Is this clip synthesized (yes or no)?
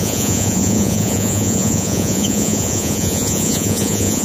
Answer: yes